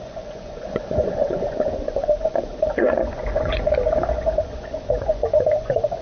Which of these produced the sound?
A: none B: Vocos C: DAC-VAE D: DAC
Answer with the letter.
B